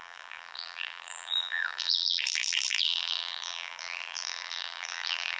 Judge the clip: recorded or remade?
remade